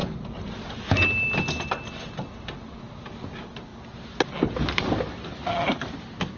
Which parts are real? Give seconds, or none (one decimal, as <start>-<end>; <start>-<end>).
0.0-6.4